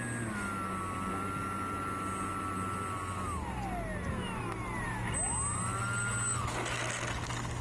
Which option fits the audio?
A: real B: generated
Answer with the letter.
A